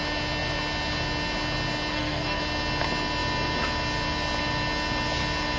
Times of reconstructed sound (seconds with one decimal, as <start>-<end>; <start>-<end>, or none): 1.9-2.4